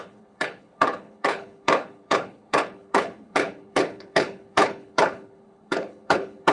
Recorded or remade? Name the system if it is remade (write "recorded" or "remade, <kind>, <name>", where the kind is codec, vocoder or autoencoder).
remade, codec, HILCodec